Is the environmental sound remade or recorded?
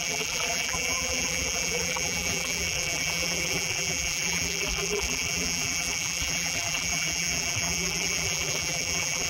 remade